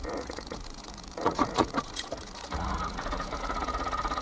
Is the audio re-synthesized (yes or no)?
yes